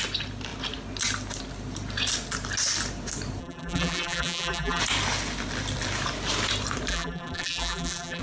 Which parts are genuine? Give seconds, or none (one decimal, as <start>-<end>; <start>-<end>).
0.0-3.4; 4.8-6.9